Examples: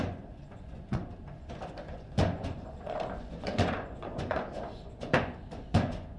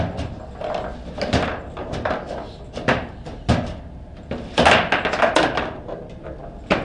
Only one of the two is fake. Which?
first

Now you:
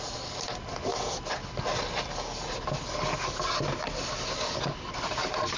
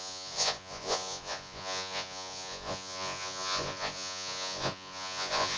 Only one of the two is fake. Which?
second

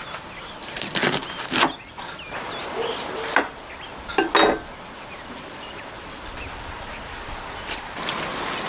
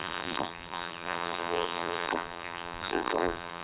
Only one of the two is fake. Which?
second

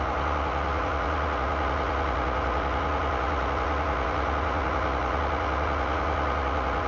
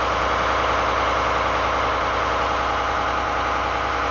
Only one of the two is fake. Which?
first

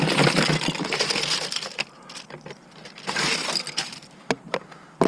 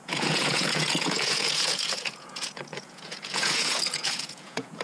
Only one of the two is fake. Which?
second